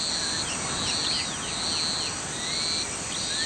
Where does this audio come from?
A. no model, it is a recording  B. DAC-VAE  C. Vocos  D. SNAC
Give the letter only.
A